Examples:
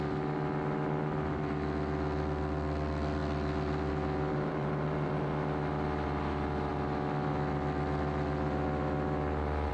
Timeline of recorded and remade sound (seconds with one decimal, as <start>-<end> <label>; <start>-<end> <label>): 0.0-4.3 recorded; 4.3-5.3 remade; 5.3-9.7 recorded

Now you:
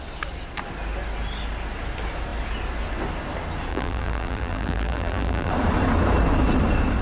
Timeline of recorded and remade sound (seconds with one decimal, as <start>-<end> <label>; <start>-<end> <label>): 0.0-3.7 recorded; 3.7-5.5 remade; 5.5-7.0 recorded

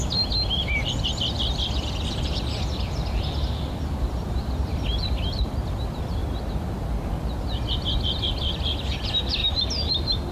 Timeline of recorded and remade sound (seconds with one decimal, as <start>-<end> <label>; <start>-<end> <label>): 0.0-6.2 remade; 6.2-7.4 recorded; 7.4-9.4 remade; 9.4-10.3 recorded

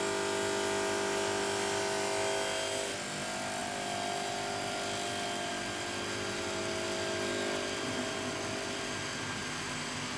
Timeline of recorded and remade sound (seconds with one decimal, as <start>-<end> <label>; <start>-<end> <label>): 0.0-10.2 recorded

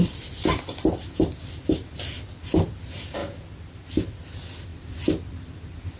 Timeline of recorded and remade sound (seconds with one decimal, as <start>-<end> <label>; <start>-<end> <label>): 0.0-3.2 remade; 3.2-3.9 recorded; 3.9-6.0 remade

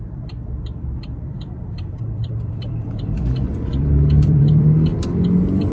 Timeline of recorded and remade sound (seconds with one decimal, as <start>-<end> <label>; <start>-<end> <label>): 0.0-4.9 remade; 4.9-5.7 recorded

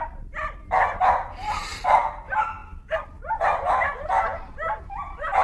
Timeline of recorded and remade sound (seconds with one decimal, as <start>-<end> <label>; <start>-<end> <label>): 0.0-5.4 recorded